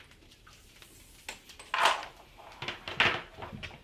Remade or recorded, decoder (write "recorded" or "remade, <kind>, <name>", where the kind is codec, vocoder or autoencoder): recorded